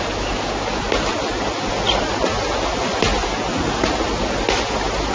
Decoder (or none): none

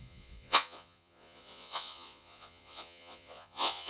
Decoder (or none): vocoder, Vocos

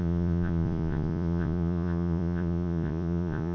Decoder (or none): vocoder, Vocos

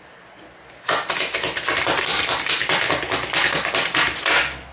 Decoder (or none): none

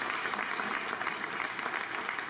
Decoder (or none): none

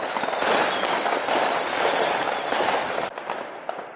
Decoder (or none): none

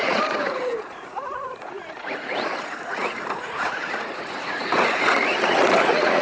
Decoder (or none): vocoder, Vocos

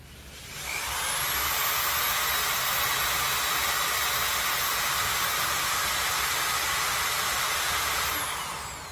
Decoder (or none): none